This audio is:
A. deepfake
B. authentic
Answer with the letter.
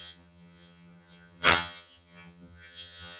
A